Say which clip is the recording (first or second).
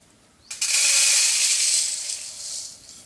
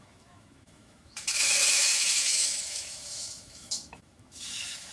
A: first